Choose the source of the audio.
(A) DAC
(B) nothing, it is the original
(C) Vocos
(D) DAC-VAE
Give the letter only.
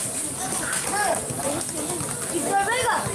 B